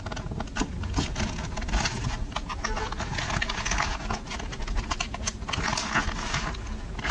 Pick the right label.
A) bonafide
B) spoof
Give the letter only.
A